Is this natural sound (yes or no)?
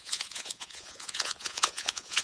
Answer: no